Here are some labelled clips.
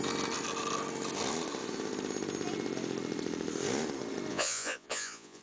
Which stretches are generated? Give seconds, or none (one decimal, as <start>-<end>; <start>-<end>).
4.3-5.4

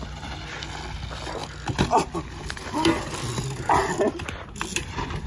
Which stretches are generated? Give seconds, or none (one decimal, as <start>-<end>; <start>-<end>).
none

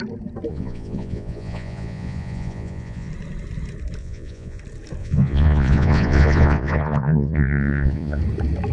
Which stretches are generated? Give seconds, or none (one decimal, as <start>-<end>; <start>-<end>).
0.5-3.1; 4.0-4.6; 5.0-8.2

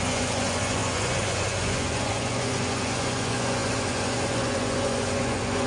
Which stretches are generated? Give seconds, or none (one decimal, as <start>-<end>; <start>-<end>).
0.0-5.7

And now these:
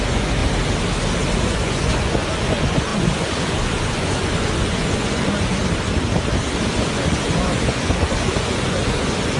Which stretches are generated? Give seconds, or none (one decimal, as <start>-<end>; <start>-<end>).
0.0-0.4; 1.4-5.6; 6.7-9.4

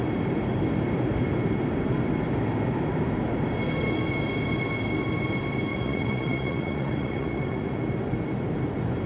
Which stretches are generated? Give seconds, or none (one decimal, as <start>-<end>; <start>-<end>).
5.7-7.8

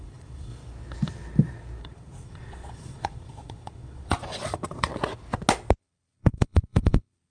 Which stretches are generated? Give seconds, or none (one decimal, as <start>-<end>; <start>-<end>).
0.0-0.5; 1.8-4.9; 5.8-7.3

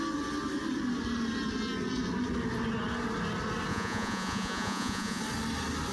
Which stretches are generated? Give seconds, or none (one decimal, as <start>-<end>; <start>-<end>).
3.7-5.2